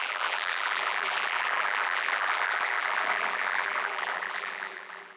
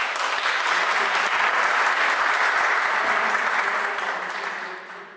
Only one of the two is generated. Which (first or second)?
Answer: first